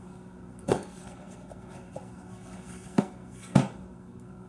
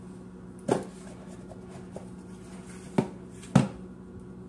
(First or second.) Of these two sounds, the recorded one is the second